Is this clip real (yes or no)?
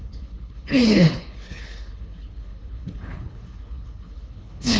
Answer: no